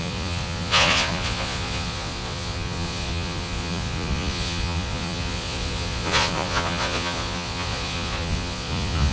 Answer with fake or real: fake